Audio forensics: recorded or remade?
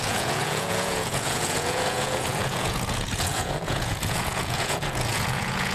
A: remade